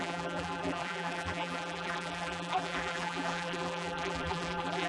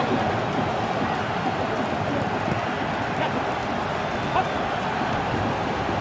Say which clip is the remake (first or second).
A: first